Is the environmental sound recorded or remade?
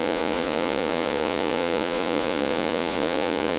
remade